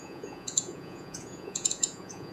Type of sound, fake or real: fake